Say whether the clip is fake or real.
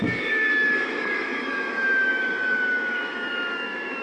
fake